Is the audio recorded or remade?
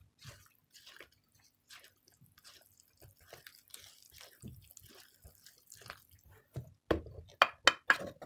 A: recorded